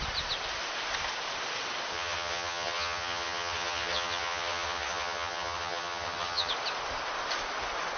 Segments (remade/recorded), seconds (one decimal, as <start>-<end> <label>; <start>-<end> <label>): 0.0-1.9 recorded; 1.9-6.5 remade; 6.5-8.0 recorded